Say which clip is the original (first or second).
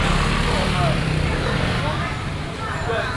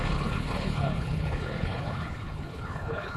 first